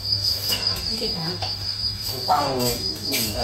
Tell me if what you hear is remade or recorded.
remade